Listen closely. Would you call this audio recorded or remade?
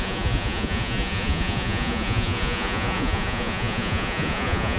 remade